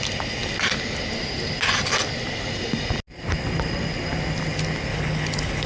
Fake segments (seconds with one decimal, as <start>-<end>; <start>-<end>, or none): 4.9-5.7